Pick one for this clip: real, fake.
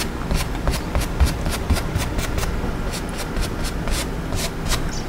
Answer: real